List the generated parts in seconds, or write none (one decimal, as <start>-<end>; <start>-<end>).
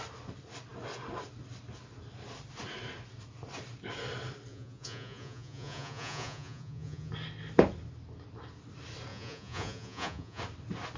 4.5-7.1; 9.1-10.4